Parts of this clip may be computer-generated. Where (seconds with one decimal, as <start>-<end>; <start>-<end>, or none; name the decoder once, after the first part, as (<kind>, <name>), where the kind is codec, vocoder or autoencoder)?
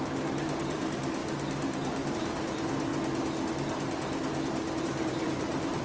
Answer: 0.0-1.2 (vocoder, BigVGAN v2); 2.1-2.9; 4.8-5.8